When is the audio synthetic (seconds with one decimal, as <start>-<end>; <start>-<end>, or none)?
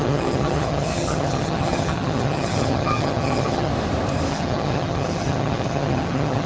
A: 0.0-3.7; 4.3-6.5